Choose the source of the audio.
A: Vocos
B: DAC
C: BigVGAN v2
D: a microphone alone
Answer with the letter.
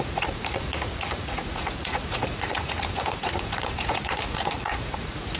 A